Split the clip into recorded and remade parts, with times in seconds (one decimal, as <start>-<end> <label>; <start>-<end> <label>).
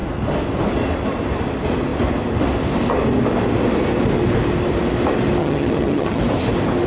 0.0-5.4 recorded; 5.4-6.2 remade; 6.2-6.9 recorded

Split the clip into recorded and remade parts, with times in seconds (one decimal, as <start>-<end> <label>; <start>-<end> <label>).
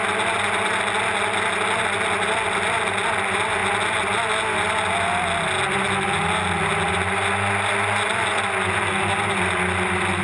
0.0-10.2 recorded